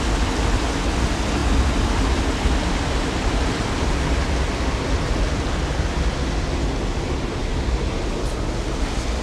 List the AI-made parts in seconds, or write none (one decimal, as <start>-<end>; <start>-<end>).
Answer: 1.4-3.9